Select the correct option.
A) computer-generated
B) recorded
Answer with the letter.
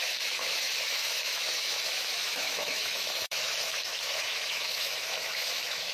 A